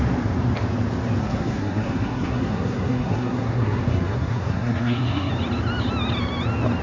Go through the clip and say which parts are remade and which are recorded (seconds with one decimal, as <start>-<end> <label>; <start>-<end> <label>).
0.0-1.2 recorded; 1.2-5.3 remade; 5.3-6.8 recorded

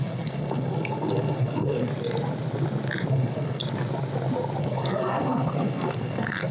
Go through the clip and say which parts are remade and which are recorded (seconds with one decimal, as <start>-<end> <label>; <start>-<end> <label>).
0.0-1.9 remade; 1.9-3.1 recorded; 3.1-3.6 remade; 3.6-4.6 recorded; 4.6-6.5 remade

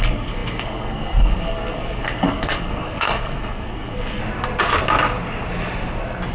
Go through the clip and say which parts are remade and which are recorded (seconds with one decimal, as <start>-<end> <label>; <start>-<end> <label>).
0.0-4.2 remade; 4.2-6.3 recorded

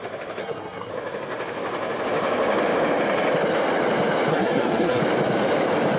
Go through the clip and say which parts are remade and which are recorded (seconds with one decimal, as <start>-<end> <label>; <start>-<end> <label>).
0.0-0.4 recorded; 0.4-0.9 remade; 0.9-4.3 recorded; 4.3-5.0 remade; 5.0-6.0 recorded

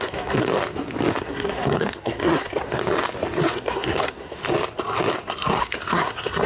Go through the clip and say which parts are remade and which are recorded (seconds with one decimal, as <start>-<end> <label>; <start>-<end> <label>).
0.0-0.5 remade; 0.5-1.2 recorded; 1.2-2.8 remade; 2.8-3.4 recorded; 3.4-4.4 remade; 4.4-5.6 recorded; 5.6-6.5 remade

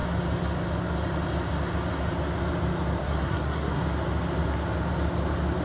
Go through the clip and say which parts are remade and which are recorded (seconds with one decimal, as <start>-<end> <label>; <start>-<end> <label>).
0.0-3.0 recorded; 3.0-3.8 remade; 3.8-5.6 recorded

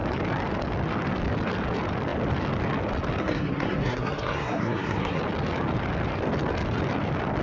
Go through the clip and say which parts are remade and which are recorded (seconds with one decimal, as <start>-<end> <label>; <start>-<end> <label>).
0.0-3.2 recorded; 3.2-5.2 remade; 5.2-7.4 recorded